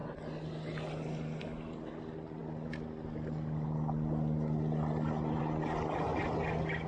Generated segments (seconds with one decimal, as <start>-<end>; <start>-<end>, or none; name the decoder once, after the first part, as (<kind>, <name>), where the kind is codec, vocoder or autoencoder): none